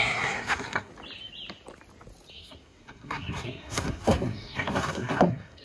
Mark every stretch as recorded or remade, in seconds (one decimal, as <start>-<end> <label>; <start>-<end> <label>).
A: 0.0-0.9 remade; 0.9-2.3 recorded; 2.3-5.6 remade